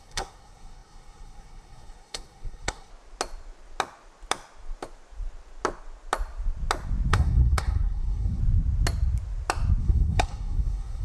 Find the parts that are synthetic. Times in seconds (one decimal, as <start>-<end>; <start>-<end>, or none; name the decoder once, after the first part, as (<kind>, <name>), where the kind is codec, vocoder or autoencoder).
0.0-2.9 (codec, SNAC); 7.1-8.4; 9.8-11.0